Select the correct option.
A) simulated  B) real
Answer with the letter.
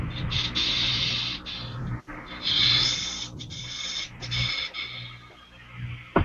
B